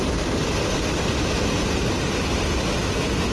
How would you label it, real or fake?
real